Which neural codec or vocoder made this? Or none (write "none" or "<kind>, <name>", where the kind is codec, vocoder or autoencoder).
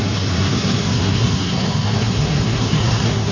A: codec, SNAC